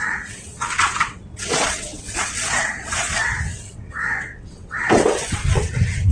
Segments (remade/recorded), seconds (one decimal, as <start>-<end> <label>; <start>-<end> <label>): 0.0-6.1 remade